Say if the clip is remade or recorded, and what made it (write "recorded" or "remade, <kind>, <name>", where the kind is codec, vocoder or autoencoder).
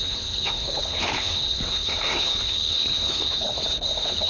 remade, codec, HILCodec